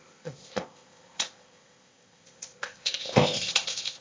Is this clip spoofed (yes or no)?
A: yes